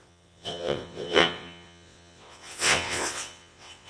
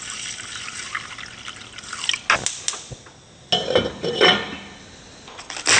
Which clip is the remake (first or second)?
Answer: first